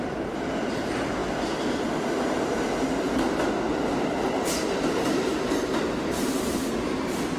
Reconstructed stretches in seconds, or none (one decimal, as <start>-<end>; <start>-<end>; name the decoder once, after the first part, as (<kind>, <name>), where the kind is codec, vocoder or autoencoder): none